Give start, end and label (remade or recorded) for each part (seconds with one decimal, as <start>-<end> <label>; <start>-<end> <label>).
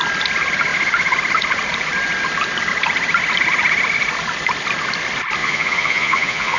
0.0-5.4 recorded; 5.4-6.6 remade